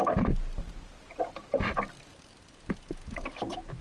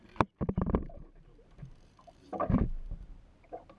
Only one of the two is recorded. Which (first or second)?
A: first